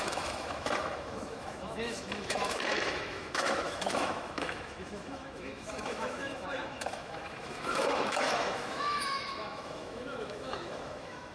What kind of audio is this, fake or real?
fake